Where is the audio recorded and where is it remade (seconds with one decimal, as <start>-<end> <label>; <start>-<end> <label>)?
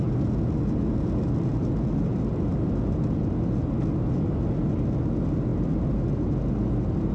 0.0-7.1 recorded